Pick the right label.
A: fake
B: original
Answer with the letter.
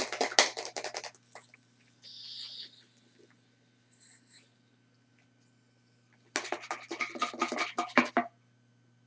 B